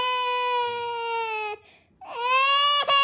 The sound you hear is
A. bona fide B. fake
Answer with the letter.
A